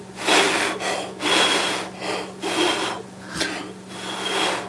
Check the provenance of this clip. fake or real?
real